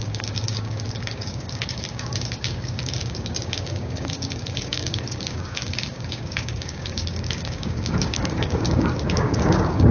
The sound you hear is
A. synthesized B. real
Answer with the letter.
A